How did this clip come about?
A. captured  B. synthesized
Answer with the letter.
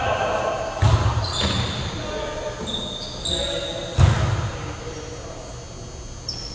A